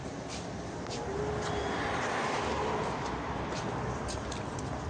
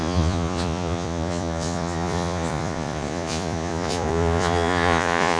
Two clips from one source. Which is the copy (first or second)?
second